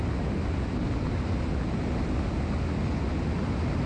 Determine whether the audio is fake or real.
real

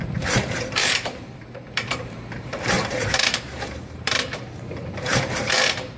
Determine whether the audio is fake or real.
fake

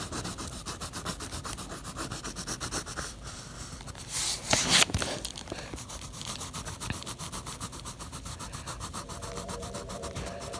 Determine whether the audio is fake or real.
fake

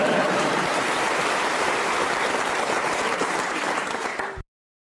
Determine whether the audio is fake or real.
fake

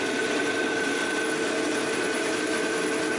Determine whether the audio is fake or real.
real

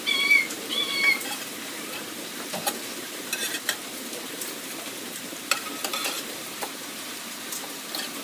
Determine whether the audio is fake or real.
fake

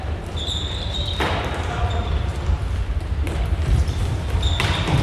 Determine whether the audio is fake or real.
fake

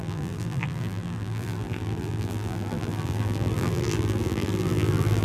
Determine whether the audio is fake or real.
fake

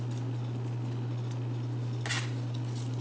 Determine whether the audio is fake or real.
real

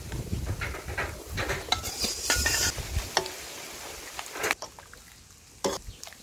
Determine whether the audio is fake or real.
real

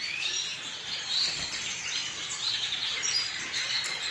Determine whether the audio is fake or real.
fake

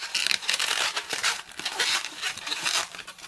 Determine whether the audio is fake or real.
fake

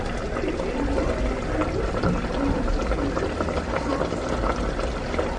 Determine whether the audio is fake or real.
real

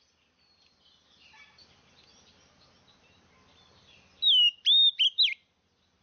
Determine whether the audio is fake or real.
real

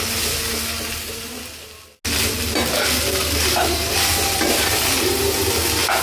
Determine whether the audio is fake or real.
real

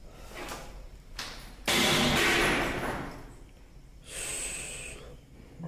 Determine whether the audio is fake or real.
real